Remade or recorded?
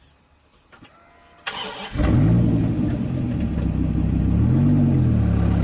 recorded